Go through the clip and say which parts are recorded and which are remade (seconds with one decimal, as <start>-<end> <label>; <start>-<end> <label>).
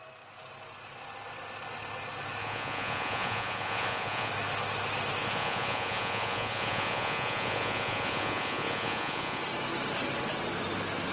0.0-2.4 recorded; 2.4-4.3 remade; 4.3-5.2 recorded; 5.2-9.4 remade; 9.4-11.1 recorded